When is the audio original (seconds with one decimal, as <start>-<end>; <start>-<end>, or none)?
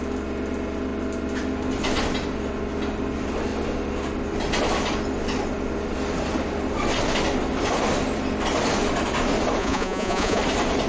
0.0-9.6; 10.4-10.9